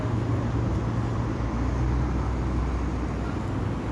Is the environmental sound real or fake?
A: real